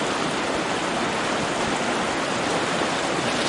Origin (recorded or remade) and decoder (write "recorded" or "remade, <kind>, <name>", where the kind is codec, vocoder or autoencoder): recorded